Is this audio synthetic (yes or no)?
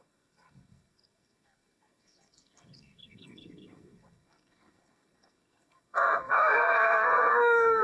yes